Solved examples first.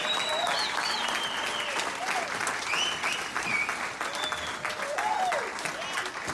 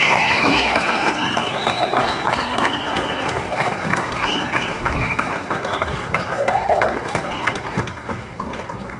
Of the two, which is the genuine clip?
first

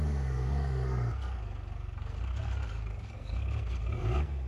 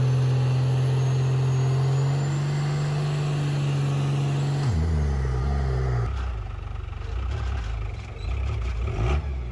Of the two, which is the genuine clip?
second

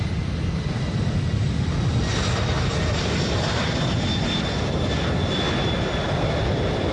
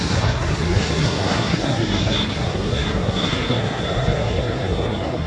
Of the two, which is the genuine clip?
first